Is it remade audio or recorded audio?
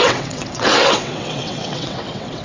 remade